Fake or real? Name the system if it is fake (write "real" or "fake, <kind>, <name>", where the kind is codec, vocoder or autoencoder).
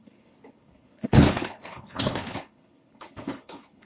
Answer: fake, codec, HILCodec